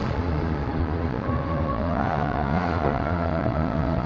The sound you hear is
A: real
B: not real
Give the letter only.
B